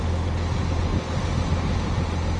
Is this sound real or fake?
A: real